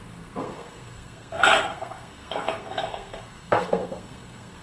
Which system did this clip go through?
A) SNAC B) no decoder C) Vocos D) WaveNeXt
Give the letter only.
A